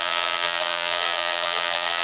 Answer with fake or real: fake